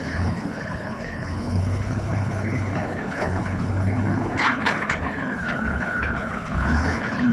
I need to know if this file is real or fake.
fake